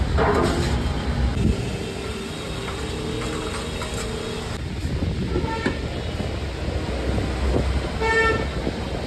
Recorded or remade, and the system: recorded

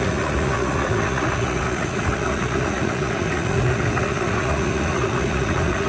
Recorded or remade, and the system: remade, vocoder, Vocos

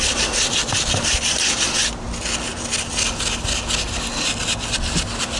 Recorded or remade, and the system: recorded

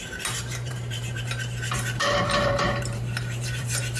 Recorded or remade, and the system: remade, vocoder, BigVGAN v2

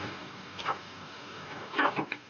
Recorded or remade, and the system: remade, codec, DAC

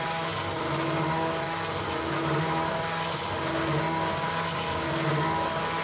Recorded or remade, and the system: recorded